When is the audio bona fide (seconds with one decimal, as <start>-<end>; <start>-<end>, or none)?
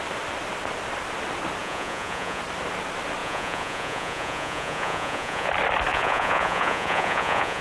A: 0.0-1.6; 2.4-3.2; 5.5-5.9